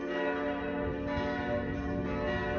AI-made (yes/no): no